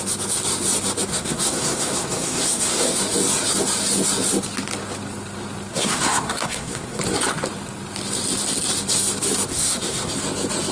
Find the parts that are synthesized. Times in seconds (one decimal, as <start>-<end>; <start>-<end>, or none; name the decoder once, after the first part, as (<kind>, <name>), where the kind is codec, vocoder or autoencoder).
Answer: 1.1-3.0 (codec, SNAC); 5.7-7.0; 9.5-10.1